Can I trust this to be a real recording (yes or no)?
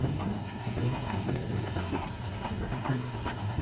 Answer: no